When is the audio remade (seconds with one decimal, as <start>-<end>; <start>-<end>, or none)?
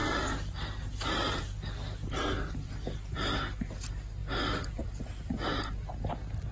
2.0-2.7; 4.2-4.8